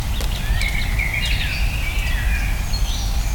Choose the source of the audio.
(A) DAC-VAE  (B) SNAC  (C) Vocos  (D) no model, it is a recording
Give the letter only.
D